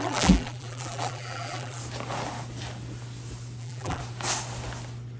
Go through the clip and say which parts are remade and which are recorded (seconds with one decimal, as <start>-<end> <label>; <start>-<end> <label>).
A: 0.0-1.8 remade; 1.8-3.6 recorded; 3.6-4.0 remade; 4.0-5.2 recorded